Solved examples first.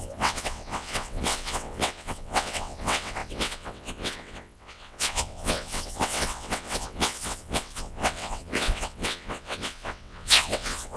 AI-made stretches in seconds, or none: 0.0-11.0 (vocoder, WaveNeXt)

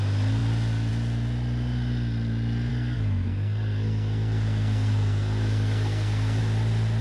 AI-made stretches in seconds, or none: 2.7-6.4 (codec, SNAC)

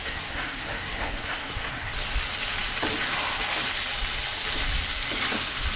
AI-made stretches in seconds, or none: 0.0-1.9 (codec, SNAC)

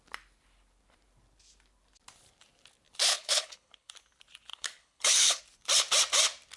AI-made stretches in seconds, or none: 3.1-3.9 (codec, HILCodec); 4.5-5.4